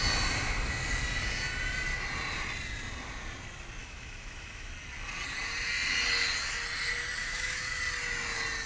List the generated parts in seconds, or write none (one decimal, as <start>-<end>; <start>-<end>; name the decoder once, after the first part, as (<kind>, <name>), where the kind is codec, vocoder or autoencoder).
3.8-4.7 (autoencoder, DAC-VAE); 7.2-7.8